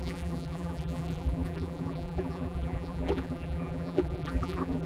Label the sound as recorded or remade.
remade